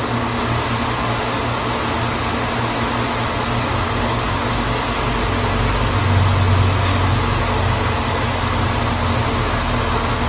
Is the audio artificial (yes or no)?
no